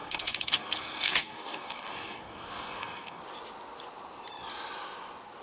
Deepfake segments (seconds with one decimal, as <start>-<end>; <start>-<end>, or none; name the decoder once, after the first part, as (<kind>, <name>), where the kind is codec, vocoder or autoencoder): 0.0-3.2 (codec, SNAC)